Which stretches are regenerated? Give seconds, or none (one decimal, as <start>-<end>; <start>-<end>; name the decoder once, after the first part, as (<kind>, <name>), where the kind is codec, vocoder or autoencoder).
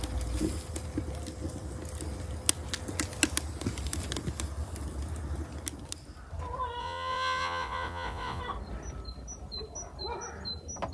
6.8-8.4 (vocoder, Vocos)